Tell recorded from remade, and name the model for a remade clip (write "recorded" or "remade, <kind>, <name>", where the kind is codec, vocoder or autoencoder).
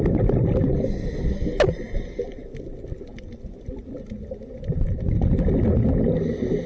recorded